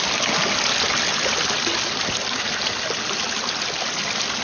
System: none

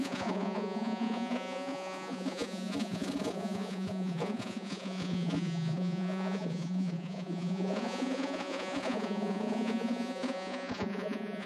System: vocoder, Vocos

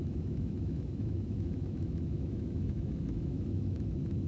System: autoencoder, DAC-VAE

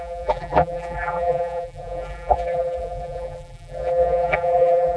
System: vocoder, BigVGAN v2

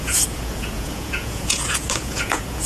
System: vocoder, Vocos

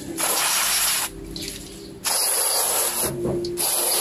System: none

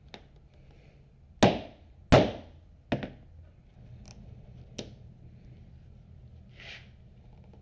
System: none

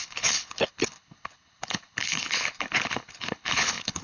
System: codec, HILCodec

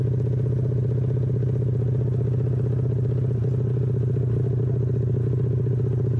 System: none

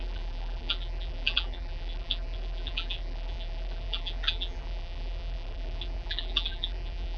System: vocoder, BigVGAN v2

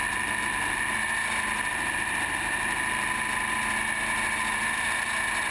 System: none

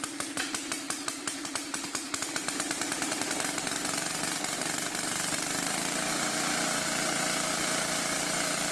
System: vocoder, BigVGAN v2